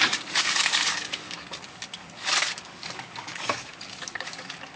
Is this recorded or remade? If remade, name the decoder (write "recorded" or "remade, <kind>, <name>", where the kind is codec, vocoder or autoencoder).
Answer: remade, codec, DAC